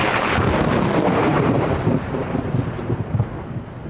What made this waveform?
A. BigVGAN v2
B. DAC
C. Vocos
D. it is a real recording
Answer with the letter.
D